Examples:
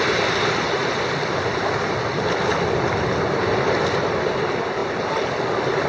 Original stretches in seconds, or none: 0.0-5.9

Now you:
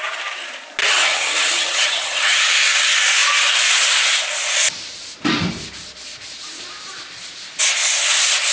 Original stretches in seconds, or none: 0.0-0.8; 2.4-8.5

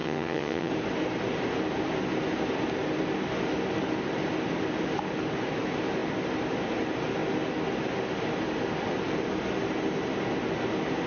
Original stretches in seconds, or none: 0.7-11.1

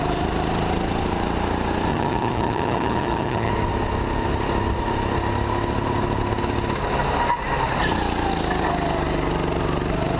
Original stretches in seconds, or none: 0.0-1.9; 3.5-10.2

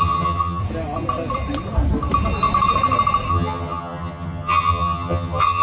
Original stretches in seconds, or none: 0.6-3.3

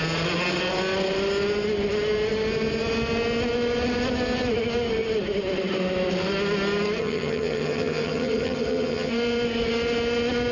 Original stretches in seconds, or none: 0.0-7.0; 9.1-10.5

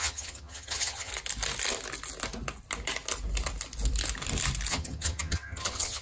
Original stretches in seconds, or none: 1.1-4.7

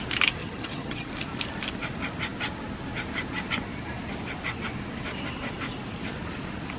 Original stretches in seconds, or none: 0.0-0.4; 1.1-6.8